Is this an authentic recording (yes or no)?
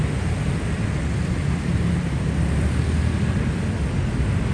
yes